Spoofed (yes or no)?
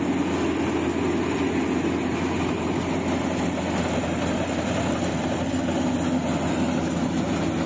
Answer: no